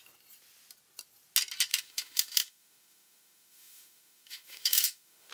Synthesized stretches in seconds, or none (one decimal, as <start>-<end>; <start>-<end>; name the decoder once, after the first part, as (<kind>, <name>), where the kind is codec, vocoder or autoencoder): 1.7-5.3 (autoencoder, DAC-VAE)